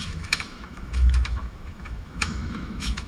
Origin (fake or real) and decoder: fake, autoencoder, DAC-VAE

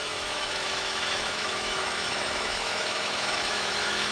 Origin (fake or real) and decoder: fake, autoencoder, DAC-VAE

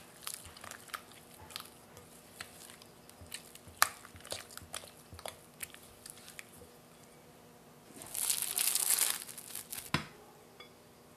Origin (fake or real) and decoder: real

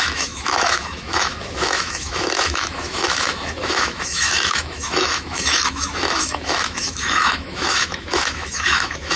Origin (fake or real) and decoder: fake, autoencoder, DAC-VAE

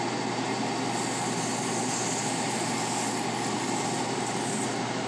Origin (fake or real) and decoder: real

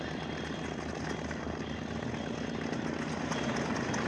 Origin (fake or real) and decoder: real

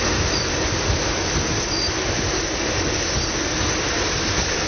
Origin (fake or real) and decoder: real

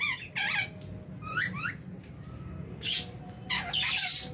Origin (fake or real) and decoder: real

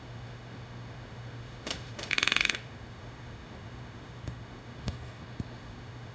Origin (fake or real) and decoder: fake, autoencoder, DAC-VAE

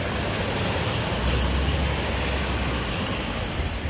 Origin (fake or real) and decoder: real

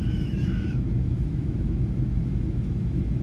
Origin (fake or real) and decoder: fake, autoencoder, DAC-VAE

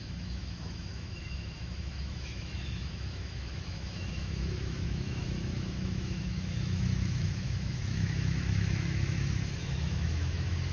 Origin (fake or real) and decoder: fake, autoencoder, DAC-VAE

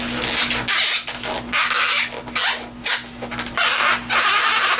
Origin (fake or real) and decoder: real